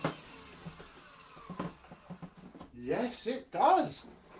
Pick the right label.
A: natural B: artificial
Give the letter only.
A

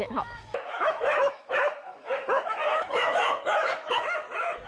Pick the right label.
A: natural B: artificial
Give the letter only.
B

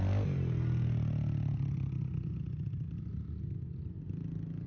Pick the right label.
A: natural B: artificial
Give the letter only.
A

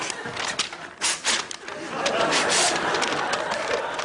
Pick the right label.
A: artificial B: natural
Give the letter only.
B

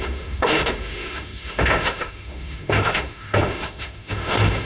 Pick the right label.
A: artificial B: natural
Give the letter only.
A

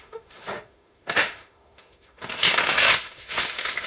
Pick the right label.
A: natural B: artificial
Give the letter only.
B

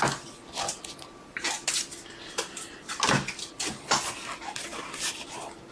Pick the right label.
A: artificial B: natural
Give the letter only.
B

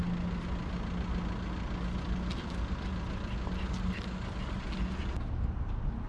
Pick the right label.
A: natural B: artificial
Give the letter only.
A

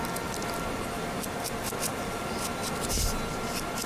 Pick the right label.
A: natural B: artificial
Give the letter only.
A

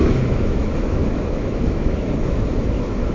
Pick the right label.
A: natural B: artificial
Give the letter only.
B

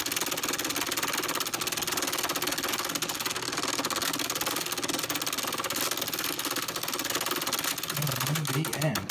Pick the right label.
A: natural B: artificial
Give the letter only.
A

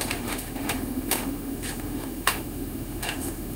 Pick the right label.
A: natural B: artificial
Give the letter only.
B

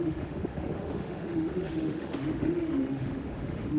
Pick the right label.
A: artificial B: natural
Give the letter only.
A